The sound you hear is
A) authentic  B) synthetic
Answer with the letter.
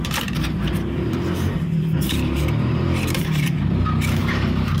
B